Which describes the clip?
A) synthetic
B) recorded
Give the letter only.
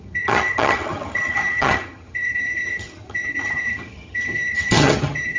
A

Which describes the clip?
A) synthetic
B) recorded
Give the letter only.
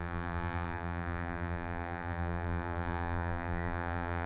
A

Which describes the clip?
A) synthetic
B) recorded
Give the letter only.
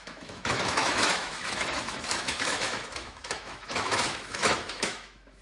A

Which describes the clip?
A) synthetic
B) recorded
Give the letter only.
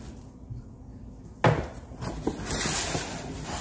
B